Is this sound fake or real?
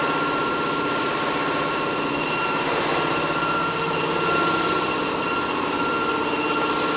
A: fake